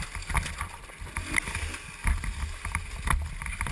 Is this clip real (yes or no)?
yes